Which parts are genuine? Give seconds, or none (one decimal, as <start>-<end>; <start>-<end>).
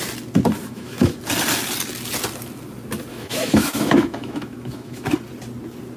0.0-0.6; 1.2-3.1; 5.1-6.0